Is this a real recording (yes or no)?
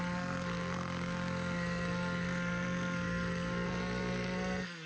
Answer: no